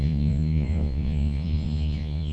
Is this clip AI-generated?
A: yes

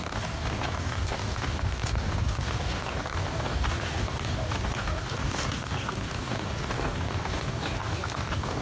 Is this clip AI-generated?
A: yes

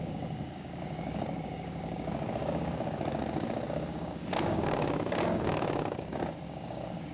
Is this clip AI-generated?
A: yes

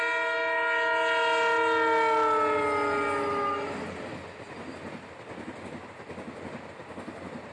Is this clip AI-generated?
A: no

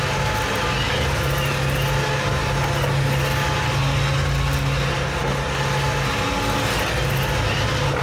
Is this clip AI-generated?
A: no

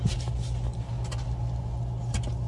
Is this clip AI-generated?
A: no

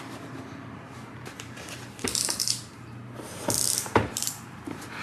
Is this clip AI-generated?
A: yes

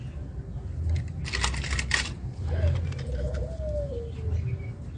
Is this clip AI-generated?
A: no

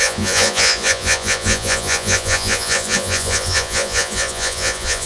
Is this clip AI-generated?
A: yes